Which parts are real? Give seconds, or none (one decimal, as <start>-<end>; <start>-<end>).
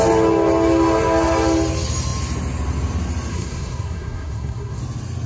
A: 0.0-3.3; 4.8-5.3